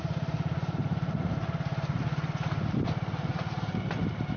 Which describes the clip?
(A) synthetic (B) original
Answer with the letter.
B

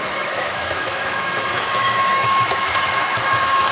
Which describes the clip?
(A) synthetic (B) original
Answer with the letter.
A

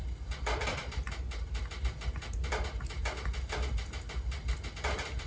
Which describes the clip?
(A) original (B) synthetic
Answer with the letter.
A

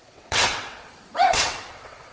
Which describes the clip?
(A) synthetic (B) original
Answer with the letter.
A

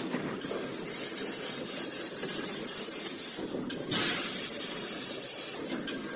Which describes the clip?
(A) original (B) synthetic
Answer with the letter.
A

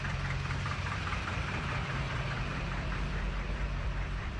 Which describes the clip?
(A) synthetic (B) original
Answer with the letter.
A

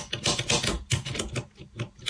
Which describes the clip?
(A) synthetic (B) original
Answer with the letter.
B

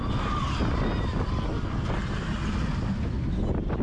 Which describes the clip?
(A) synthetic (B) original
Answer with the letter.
B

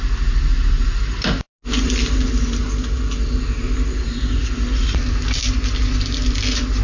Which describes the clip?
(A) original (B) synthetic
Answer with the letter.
A